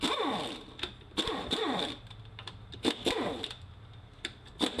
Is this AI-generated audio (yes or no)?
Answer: yes